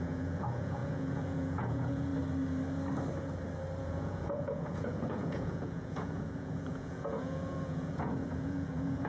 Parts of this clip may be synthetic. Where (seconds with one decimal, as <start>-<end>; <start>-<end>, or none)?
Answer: 0.0-2.1; 3.8-9.1